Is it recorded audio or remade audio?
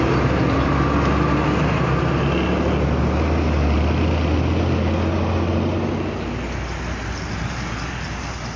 recorded